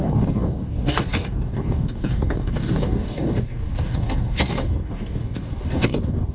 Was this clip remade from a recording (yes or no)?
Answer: yes